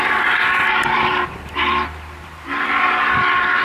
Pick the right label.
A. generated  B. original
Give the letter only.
B